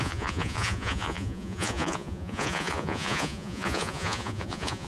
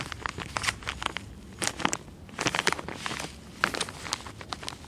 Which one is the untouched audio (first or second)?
second